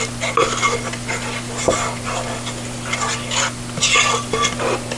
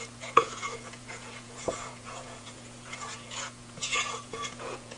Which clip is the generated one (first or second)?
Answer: second